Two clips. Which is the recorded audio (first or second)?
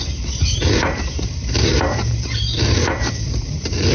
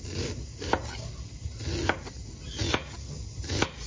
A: second